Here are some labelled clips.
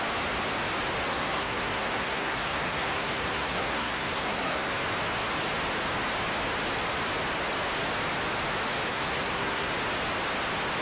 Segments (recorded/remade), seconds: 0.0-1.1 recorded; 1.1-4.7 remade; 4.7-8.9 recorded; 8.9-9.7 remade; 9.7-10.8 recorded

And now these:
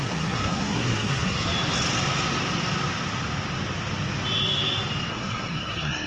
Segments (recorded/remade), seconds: 0.0-1.5 remade; 1.5-5.1 recorded; 5.1-6.1 remade

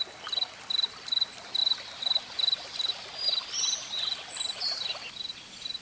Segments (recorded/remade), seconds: 0.0-5.8 recorded

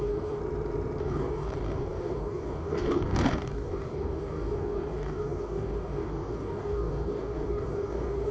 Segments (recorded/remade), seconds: 0.0-0.4 remade; 0.4-1.0 recorded; 1.0-8.3 remade

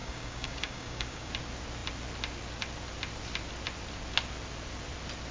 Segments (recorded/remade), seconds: 0.0-1.3 remade; 1.3-5.3 recorded

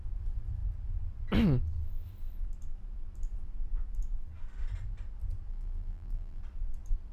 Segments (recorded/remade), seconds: 0.0-5.5 recorded; 5.5-6.4 remade; 6.4-7.1 recorded

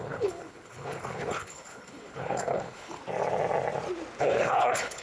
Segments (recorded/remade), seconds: 0.0-3.0 remade; 3.0-4.2 recorded; 4.2-5.0 remade

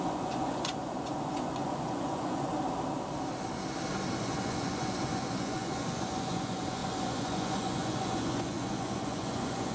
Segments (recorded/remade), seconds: 0.0-2.5 remade; 2.5-4.2 recorded; 4.2-9.7 remade